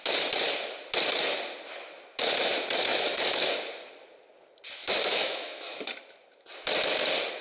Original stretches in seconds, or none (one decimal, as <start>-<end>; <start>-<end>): 0.0-2.9; 3.5-4.8; 5.8-7.4